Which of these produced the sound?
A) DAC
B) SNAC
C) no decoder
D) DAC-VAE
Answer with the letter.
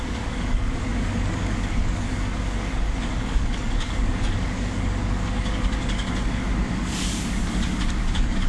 A